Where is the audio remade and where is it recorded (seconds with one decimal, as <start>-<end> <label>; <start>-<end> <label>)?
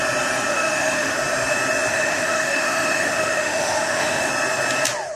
0.0-0.5 recorded; 0.5-1.2 remade; 1.2-1.9 recorded; 1.9-4.3 remade; 4.3-5.2 recorded